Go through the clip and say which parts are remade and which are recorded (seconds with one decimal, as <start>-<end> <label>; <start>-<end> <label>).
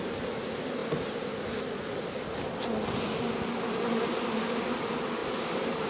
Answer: 0.0-5.9 recorded